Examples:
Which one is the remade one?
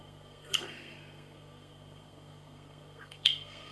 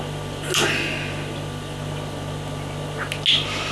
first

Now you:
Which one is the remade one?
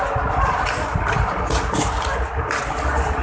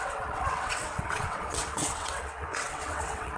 second